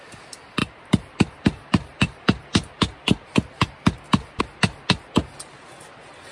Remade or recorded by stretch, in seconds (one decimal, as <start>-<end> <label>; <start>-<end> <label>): 0.0-0.6 recorded; 0.6-4.4 remade; 4.4-6.3 recorded